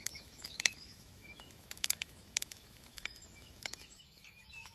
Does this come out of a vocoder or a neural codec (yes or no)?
yes